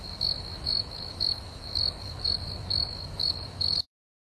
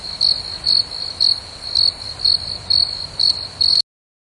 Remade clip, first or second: first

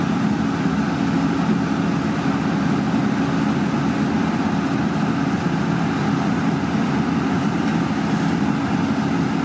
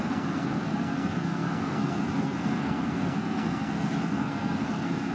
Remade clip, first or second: second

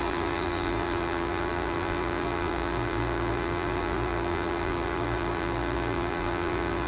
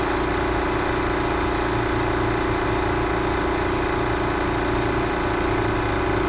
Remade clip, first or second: first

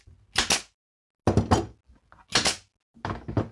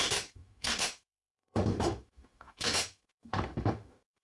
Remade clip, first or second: second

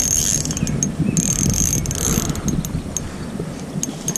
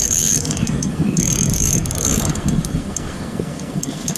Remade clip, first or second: second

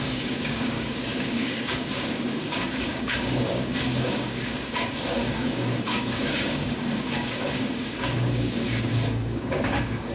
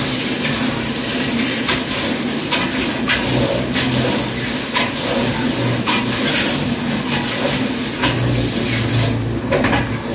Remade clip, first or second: first